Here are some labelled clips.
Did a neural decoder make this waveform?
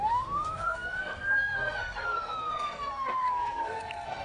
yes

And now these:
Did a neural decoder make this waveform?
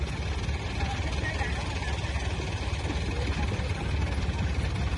no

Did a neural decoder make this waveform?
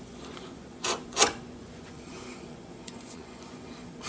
yes